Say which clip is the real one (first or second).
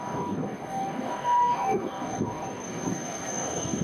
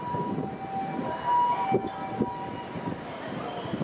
second